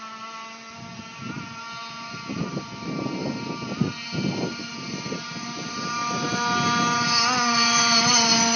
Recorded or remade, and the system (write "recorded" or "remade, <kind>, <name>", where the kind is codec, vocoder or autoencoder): recorded